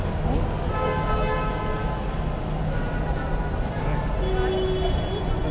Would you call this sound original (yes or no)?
yes